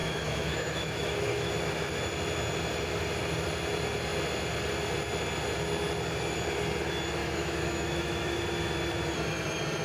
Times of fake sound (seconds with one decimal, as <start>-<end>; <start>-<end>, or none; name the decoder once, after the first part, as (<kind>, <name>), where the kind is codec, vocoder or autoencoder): 0.0-1.5 (autoencoder, DAC-VAE); 7.2-8.4